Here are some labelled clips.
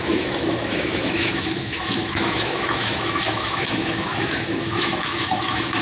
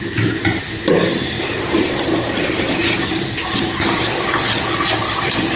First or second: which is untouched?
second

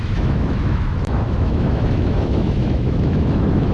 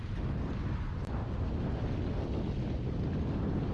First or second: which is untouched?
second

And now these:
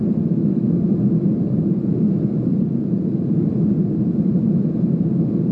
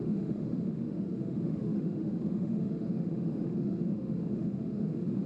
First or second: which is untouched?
first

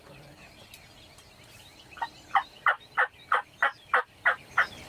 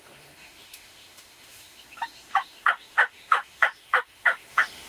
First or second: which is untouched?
first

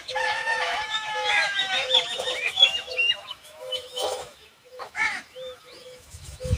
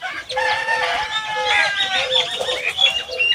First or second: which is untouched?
second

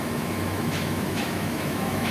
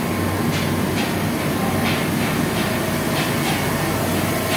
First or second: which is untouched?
second